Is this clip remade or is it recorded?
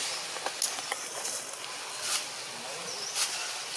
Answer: recorded